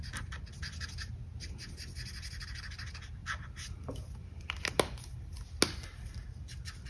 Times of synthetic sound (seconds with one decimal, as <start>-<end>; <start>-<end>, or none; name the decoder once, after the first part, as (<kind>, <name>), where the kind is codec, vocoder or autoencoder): none